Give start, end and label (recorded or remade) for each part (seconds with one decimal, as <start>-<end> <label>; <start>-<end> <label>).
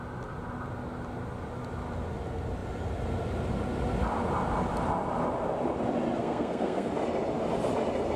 0.0-6.2 recorded; 6.2-6.9 remade; 6.9-8.2 recorded